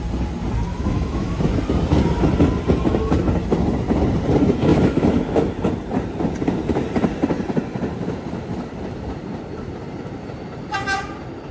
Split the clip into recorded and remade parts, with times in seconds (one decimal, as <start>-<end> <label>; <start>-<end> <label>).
0.0-0.7 recorded; 0.7-1.4 remade; 1.4-4.7 recorded; 4.7-5.5 remade; 5.5-11.5 recorded